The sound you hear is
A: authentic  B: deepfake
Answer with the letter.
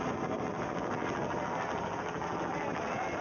A